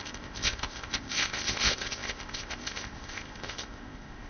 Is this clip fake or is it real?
fake